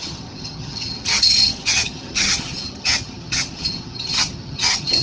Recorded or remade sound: remade